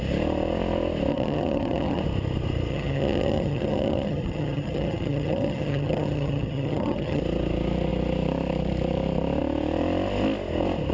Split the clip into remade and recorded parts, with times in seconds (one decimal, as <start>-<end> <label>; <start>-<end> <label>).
0.0-1.1 recorded; 1.1-2.0 remade; 2.0-2.7 recorded; 2.7-7.2 remade; 7.2-10.9 recorded